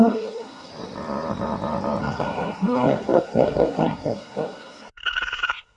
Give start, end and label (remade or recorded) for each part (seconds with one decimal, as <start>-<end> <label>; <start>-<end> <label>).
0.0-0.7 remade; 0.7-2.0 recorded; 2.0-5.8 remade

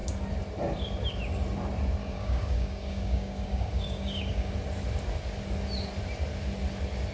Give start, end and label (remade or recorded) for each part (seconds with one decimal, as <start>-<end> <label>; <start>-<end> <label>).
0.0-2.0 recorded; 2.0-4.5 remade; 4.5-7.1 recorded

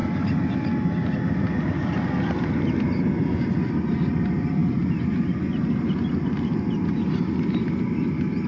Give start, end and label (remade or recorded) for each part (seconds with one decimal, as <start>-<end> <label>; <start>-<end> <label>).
0.0-8.5 recorded